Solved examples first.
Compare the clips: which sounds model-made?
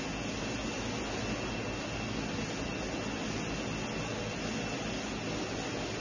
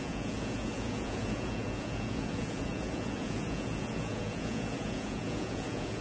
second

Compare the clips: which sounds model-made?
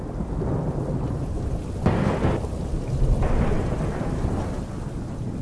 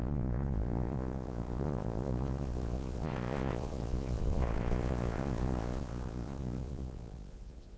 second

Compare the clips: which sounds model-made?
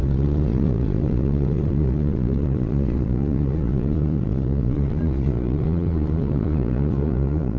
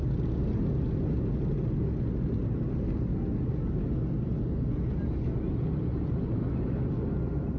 first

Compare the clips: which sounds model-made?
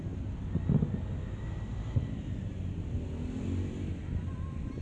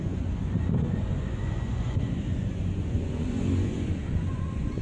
second